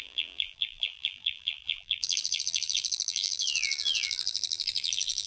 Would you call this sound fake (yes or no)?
yes